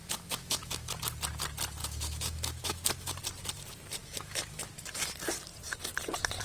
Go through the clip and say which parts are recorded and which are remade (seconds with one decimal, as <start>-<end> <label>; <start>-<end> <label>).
0.0-1.0 remade; 1.0-1.8 recorded; 1.8-3.2 remade; 3.2-4.0 recorded; 4.0-4.6 remade; 4.6-6.4 recorded